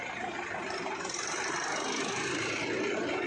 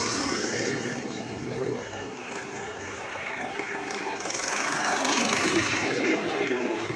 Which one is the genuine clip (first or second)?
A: first